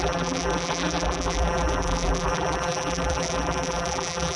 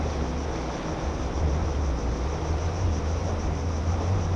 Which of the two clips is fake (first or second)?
first